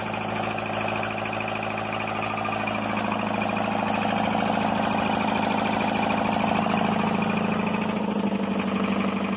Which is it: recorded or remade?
recorded